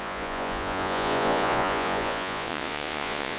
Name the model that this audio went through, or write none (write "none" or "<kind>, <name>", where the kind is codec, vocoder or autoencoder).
vocoder, Vocos